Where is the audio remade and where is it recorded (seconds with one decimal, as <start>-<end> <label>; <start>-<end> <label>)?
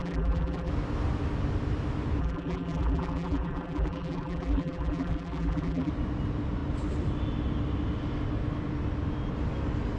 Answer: 0.0-0.7 remade; 0.7-2.2 recorded; 2.2-5.9 remade; 5.9-10.0 recorded